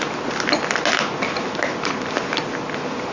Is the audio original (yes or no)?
yes